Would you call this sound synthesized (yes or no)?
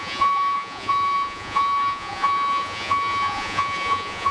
yes